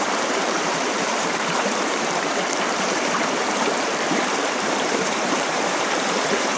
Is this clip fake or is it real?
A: fake